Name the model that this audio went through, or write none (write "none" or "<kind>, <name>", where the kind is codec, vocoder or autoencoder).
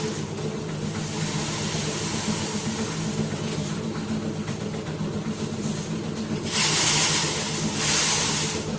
none